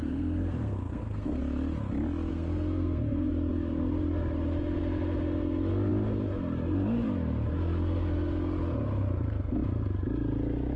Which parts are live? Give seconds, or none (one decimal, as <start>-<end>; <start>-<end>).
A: 1.4-2.3; 3.3-10.8